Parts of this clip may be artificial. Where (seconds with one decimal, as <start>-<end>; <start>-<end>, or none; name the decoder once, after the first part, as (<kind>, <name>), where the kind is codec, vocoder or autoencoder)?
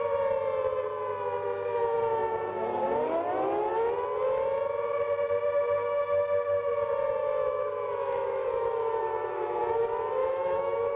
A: 7.2-9.6 (autoencoder, DAC-VAE); 10.2-11.0